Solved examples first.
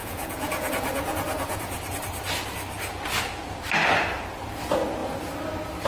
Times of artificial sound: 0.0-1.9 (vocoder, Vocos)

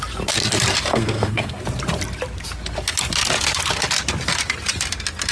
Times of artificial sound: 0.9-1.6 (codec, SNAC)

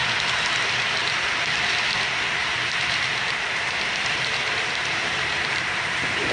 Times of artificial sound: 1.0-1.7 (vocoder, BigVGAN v2); 2.4-6.3

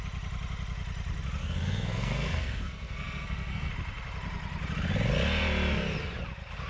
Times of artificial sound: 1.4-3.7 (codec, SNAC)

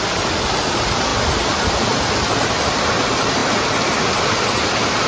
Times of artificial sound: none